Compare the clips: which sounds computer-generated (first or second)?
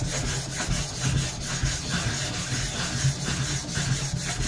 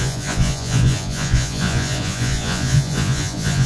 second